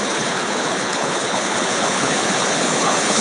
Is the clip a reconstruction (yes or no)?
yes